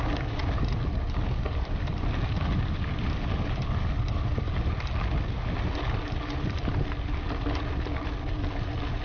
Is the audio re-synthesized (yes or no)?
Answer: no